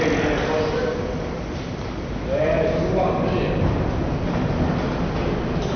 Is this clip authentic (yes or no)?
yes